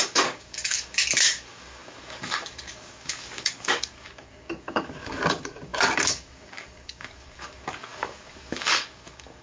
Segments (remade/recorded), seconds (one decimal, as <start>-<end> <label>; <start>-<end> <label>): 0.0-9.4 remade